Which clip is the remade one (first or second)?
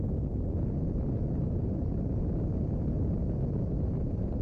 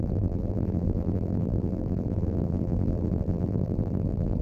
second